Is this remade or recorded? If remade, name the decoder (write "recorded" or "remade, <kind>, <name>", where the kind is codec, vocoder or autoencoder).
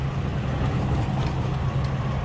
recorded